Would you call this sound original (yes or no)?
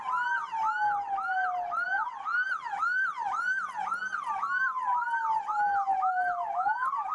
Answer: yes